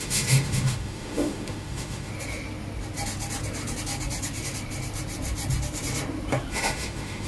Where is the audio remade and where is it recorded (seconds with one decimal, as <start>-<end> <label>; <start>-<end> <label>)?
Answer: 0.0-2.1 remade; 2.1-6.5 recorded; 6.5-7.3 remade